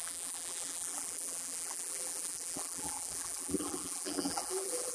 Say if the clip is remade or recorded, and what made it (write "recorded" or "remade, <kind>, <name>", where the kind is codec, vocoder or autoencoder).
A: remade, vocoder, BigVGAN v2